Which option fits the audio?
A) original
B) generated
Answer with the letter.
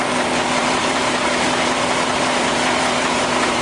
B